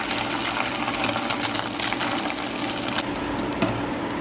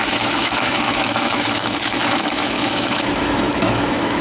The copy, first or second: second